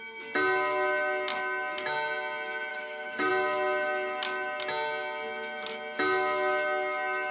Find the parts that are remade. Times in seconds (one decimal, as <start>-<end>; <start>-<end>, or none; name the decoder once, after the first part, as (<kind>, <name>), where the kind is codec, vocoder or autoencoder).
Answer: 2.7-3.3 (codec, DAC)